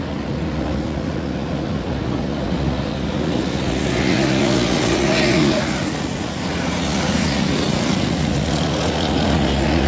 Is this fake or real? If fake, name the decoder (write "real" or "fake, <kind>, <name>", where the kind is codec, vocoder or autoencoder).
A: fake, vocoder, Vocos